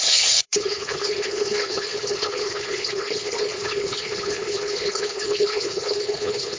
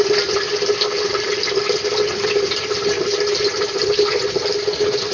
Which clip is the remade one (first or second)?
first